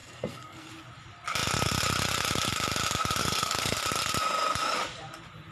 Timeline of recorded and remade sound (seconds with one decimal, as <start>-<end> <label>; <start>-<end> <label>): 0.0-0.7 remade; 0.7-3.2 recorded; 3.2-3.8 remade; 3.8-5.5 recorded